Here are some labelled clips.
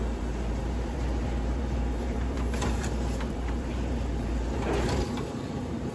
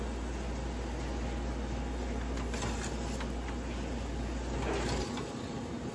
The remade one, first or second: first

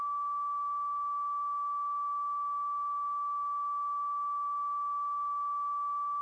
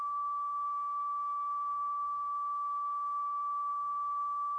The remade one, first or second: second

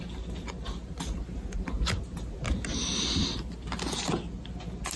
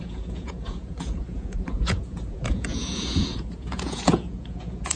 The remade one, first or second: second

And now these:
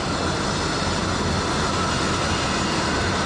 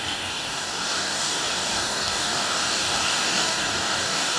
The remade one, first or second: second